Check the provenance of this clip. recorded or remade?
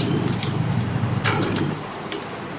remade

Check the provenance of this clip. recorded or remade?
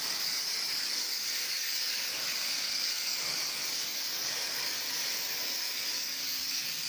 remade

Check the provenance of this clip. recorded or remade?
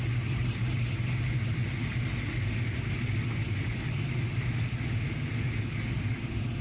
recorded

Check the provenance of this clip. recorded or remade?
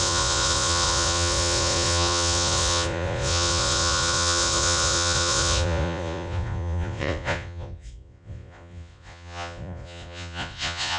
remade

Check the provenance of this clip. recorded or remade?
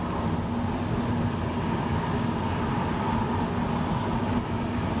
recorded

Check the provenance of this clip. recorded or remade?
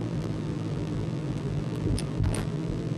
remade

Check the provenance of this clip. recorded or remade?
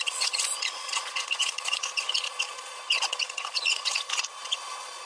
remade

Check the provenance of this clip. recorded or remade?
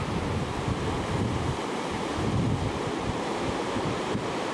remade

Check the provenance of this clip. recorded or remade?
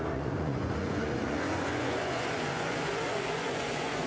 remade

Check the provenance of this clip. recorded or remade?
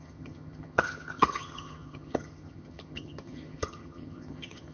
remade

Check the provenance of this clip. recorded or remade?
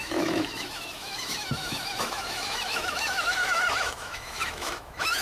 remade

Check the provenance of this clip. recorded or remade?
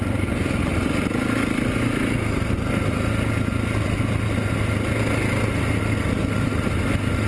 recorded